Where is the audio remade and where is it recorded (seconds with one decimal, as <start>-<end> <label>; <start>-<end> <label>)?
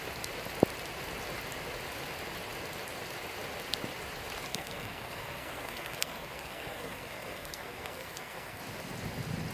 0.0-4.5 recorded; 4.5-8.6 remade; 8.6-9.5 recorded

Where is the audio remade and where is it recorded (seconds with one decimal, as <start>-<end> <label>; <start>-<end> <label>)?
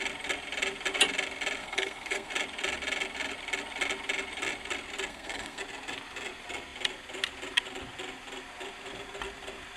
0.0-1.6 recorded; 1.6-2.3 remade; 2.3-5.1 recorded; 5.1-5.6 remade; 5.6-9.8 recorded